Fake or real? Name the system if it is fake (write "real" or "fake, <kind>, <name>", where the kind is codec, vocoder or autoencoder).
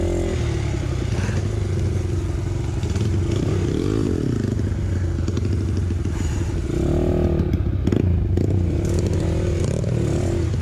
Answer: real